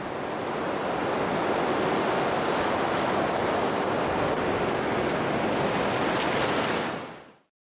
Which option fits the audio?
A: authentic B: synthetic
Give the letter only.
A